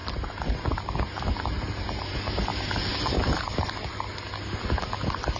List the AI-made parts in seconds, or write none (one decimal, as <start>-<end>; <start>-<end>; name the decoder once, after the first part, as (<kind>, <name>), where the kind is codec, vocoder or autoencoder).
none